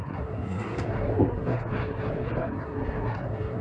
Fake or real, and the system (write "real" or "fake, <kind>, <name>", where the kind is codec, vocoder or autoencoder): fake, codec, SNAC